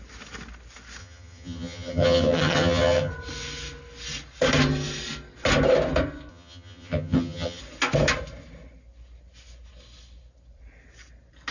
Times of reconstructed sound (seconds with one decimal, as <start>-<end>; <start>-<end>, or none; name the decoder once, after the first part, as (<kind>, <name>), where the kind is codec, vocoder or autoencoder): 1.0-3.1 (vocoder, HiFi-GAN); 6.3-7.6